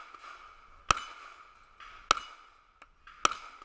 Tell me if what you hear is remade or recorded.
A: recorded